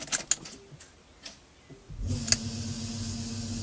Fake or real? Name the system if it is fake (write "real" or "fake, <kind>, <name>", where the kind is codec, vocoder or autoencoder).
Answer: real